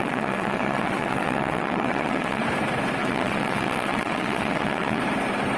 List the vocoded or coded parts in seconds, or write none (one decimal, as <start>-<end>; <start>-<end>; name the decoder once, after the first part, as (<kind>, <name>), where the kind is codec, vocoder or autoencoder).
0.0-2.4 (vocoder, WaveNeXt); 3.0-5.0